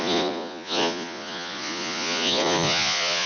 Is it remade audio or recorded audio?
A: remade